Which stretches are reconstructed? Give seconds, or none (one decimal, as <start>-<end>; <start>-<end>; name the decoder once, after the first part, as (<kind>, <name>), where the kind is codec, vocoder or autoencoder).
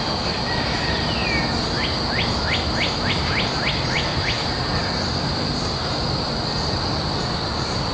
0.0-1.2 (vocoder, BigVGAN v2); 3.1-7.9